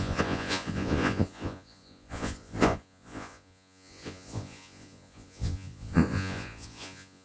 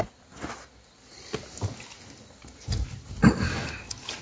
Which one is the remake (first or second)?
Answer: first